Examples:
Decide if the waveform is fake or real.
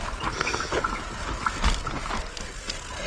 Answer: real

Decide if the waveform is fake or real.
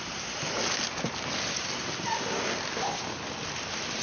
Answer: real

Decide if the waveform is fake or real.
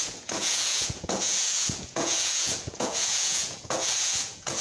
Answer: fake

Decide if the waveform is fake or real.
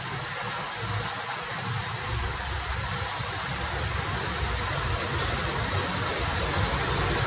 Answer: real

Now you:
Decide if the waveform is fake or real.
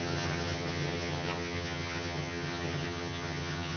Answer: fake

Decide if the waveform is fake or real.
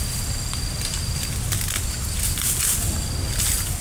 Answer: real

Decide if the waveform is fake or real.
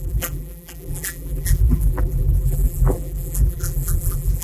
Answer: fake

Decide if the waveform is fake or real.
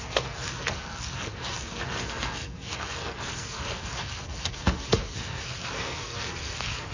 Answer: fake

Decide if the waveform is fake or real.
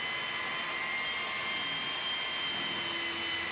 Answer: real